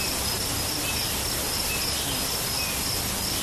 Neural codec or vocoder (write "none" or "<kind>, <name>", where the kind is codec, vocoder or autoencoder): none